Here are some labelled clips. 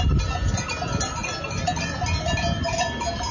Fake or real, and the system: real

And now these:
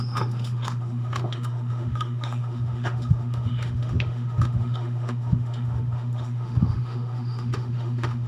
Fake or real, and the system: fake, autoencoder, DAC-VAE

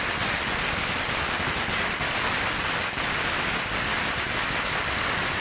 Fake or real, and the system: real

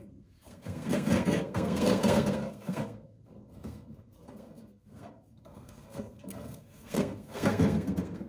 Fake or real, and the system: fake, codec, SNAC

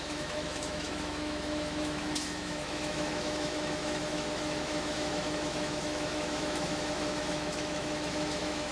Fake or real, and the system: fake, autoencoder, DAC-VAE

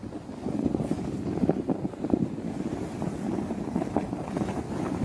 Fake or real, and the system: real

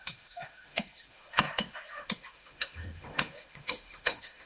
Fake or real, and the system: fake, autoencoder, DAC-VAE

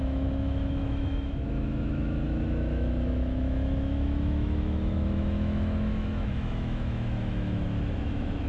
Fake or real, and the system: fake, autoencoder, DAC-VAE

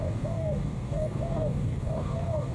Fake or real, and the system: fake, codec, DAC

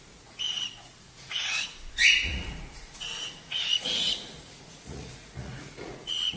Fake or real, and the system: fake, vocoder, Vocos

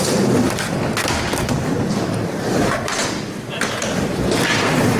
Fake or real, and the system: real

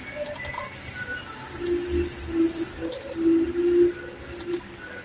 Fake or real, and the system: real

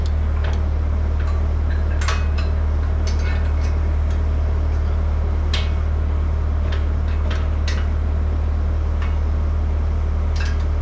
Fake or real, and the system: real